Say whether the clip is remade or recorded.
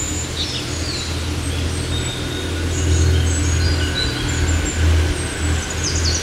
recorded